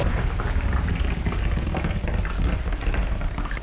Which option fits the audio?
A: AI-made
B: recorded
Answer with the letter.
B